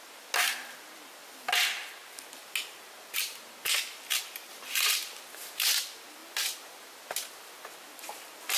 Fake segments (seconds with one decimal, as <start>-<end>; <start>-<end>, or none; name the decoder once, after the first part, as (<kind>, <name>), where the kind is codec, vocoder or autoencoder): none